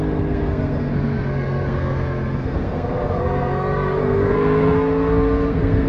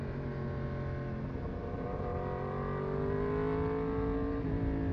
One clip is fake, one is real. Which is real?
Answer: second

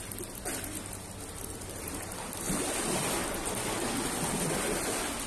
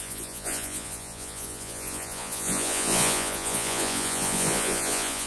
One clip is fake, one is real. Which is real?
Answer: first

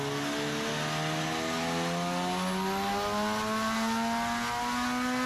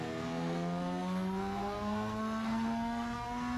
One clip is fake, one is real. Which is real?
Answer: first